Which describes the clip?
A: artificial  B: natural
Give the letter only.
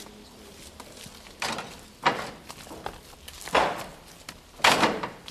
B